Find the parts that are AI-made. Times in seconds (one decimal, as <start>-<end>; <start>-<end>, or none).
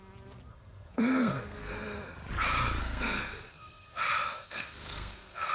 0.5-1.7; 2.8-4.0; 4.4-5.5